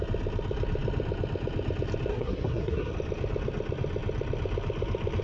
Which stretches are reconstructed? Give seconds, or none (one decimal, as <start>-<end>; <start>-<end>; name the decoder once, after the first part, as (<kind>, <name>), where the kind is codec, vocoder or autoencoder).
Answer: 2.1-2.9 (codec, SNAC)